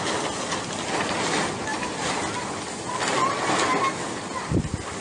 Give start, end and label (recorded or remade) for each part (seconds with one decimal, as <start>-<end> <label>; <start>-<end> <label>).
0.0-5.0 recorded